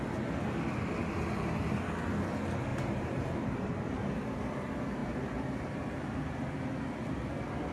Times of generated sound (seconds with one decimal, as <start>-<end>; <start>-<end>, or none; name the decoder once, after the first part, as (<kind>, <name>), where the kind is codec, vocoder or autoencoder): 2.7-4.0 (vocoder, BigVGAN v2); 5.0-6.5